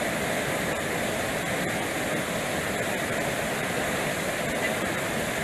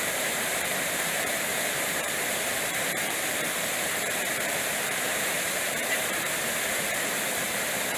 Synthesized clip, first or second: second